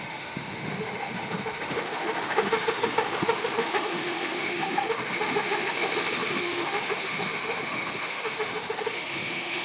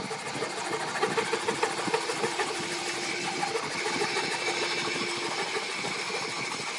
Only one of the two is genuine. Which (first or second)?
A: second